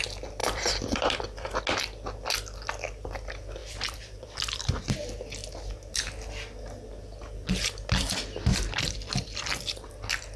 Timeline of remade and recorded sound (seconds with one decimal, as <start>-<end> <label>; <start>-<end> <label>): 0.0-0.4 recorded; 0.4-1.5 remade; 1.5-3.6 recorded; 3.6-4.7 remade; 4.7-8.5 recorded; 8.5-9.9 remade; 9.9-10.4 recorded